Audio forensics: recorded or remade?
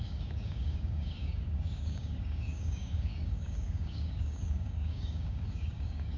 remade